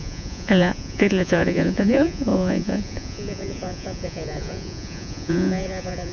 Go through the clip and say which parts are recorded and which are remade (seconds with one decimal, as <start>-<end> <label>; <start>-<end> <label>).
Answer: 0.0-6.1 remade